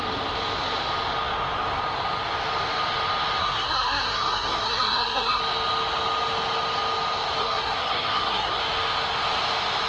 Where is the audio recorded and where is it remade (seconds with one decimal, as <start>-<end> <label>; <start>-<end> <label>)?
0.0-3.4 recorded; 3.4-5.4 remade; 5.4-7.4 recorded; 7.4-8.6 remade; 8.6-9.9 recorded